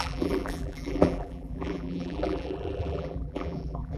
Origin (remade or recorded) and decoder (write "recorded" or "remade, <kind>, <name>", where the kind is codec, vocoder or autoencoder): remade, vocoder, BigVGAN v2